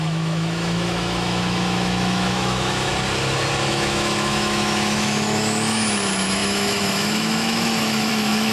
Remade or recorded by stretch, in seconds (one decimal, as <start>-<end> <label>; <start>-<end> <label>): 0.0-2.9 remade; 2.9-3.7 recorded; 3.7-8.5 remade